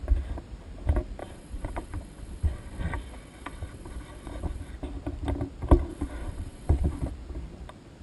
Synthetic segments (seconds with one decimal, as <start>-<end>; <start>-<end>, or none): 1.2-4.7; 5.9-7.1